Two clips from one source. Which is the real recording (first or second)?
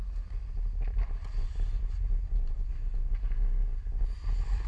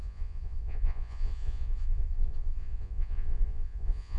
first